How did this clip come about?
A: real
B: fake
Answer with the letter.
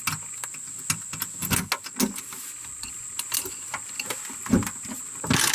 A